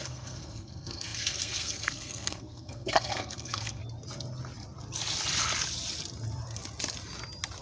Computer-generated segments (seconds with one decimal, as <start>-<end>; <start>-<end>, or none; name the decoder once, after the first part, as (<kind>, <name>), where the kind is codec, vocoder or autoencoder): 0.0-3.8 (codec, SNAC)